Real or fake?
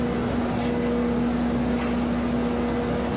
real